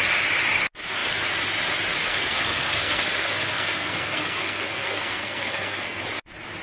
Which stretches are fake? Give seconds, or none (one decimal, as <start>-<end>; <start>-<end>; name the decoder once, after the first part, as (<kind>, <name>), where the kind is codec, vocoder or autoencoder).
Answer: 2.0-6.0 (codec, SNAC)